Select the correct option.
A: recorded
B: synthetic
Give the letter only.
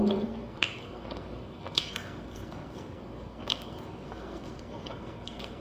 B